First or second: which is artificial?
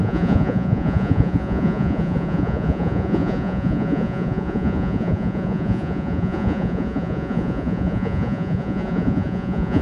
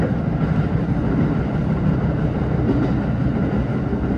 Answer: first